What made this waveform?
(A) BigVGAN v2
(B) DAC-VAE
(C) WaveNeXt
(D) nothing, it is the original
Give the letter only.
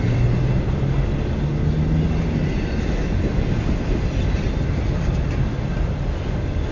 D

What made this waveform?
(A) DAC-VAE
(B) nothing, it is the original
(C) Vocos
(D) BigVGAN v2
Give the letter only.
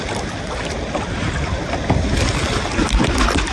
B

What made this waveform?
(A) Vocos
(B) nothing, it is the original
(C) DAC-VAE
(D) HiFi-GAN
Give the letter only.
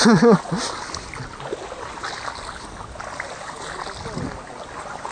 B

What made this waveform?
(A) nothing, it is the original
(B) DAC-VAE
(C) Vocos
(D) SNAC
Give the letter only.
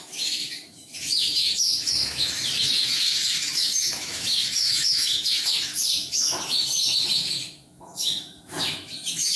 B